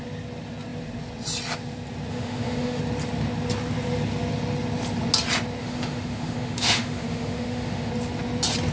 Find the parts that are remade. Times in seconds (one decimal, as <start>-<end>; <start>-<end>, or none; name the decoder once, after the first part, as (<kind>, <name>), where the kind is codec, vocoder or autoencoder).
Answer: 2.1-2.8 (autoencoder, DAC-VAE); 5.6-7.9